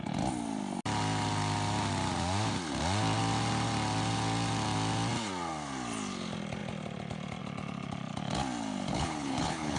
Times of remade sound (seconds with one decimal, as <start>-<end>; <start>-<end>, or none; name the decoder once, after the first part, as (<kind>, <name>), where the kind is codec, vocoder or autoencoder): 8.9-9.8 (codec, HILCodec)